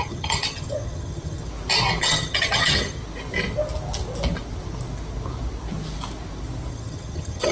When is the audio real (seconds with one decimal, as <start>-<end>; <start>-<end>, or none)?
1.5-2.0; 3.0-6.7